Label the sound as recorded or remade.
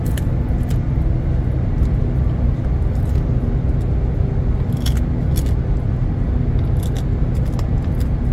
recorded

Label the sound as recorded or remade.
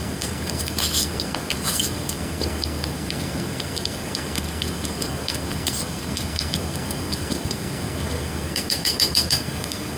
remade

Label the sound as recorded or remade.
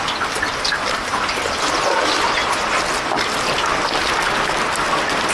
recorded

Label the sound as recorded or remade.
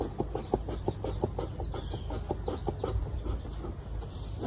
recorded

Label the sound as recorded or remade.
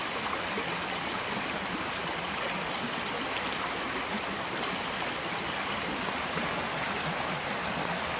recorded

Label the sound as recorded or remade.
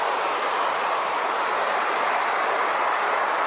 recorded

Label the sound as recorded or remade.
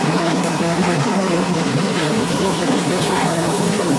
remade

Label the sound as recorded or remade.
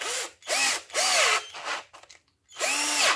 recorded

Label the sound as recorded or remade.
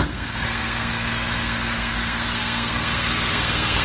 remade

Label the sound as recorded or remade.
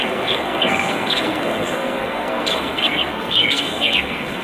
remade